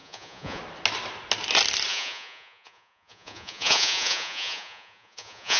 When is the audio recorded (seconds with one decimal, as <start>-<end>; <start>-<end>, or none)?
0.6-1.9